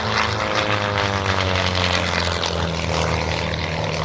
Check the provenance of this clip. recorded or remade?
recorded